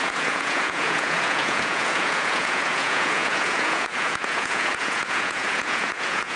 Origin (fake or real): fake